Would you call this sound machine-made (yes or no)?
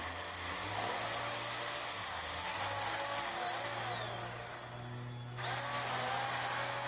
no